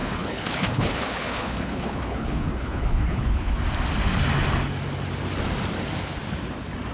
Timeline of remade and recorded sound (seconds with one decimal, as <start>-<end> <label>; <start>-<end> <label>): 0.0-3.6 remade; 3.6-6.9 recorded